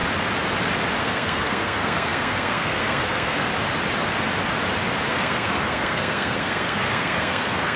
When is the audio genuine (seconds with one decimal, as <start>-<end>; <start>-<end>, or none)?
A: 0.0-1.0; 3.5-5.1